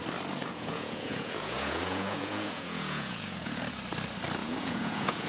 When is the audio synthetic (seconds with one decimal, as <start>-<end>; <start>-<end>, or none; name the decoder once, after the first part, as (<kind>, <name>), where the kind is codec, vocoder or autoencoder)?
0.4-3.6 (vocoder, Vocos); 4.4-5.3

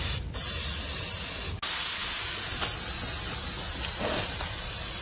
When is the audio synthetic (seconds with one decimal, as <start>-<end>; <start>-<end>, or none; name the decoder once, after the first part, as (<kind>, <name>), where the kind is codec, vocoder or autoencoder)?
none

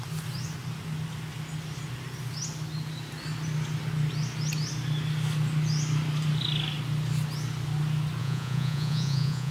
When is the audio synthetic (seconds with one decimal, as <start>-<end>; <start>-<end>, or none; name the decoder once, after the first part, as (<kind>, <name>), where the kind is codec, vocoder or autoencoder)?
8.2-9.5 (vocoder, Vocos)

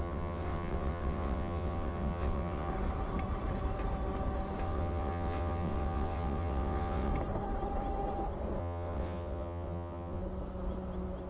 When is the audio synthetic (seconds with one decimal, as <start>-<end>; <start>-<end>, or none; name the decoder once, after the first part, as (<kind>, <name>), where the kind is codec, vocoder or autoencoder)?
0.0-2.7 (vocoder, WaveNeXt); 4.6-7.1; 8.6-10.2

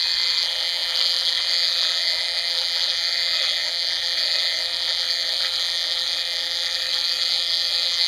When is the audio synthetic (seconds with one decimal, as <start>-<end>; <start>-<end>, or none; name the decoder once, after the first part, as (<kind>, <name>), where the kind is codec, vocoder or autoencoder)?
0.0-8.1 (vocoder, BigVGAN v2)

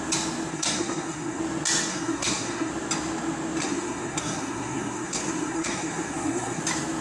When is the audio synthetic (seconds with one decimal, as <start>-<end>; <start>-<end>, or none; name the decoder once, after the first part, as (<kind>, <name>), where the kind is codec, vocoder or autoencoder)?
0.5-1.4 (codec, SNAC); 1.9-2.7; 3.6-6.6

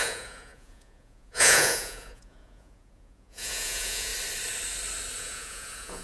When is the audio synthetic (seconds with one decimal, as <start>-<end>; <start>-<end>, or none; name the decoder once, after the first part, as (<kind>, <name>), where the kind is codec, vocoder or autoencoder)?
0.0-4.1 (vocoder, Vocos); 5.2-6.0

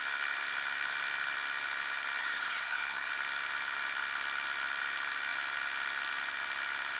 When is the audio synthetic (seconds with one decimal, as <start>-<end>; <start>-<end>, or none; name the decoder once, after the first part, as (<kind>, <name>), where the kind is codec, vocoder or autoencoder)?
2.2-3.1 (codec, SNAC)